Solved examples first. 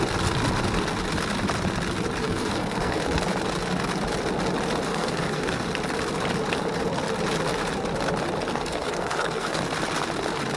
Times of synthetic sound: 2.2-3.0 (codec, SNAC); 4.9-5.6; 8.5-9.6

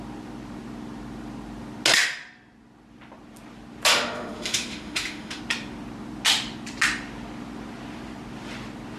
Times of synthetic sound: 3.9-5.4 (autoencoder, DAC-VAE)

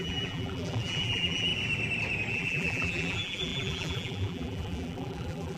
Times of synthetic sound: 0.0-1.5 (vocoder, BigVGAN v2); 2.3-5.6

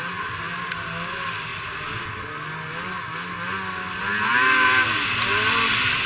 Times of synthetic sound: none

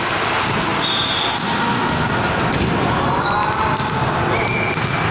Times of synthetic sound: none

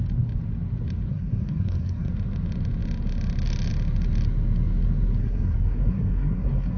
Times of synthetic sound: 1.1-2.1 (codec, SNAC); 5.2-6.8

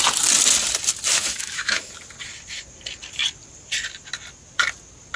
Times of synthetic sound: 1.1-1.9 (autoencoder, DAC-VAE)

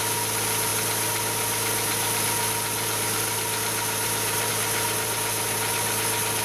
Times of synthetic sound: none